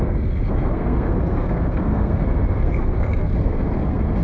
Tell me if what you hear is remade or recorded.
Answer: remade